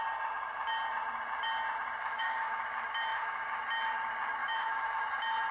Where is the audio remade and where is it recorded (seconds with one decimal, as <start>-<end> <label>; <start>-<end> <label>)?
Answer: 0.0-2.0 recorded; 2.0-2.6 remade; 2.6-3.1 recorded; 3.1-3.6 remade; 3.6-4.4 recorded; 4.4-5.0 remade; 5.0-5.5 recorded